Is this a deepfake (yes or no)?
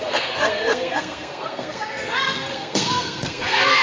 yes